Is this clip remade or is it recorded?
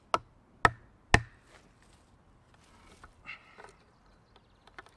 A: recorded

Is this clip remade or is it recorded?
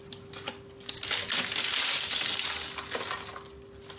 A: recorded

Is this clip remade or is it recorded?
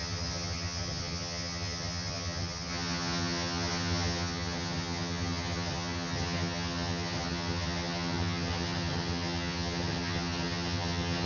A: remade